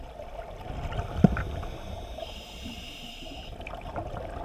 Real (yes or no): yes